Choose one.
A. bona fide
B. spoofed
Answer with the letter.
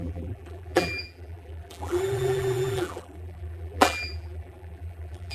B